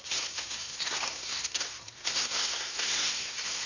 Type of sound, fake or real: fake